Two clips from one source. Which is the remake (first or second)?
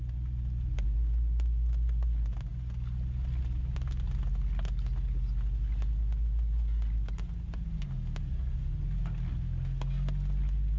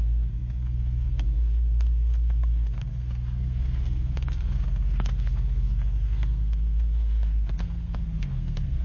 second